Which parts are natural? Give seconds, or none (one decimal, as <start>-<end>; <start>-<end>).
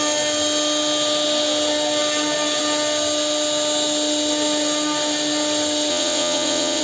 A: 0.0-5.9